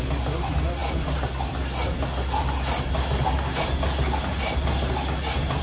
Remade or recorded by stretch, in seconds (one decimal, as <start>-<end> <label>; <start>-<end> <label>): 0.0-5.6 recorded